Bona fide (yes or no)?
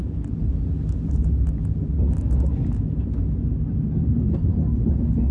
yes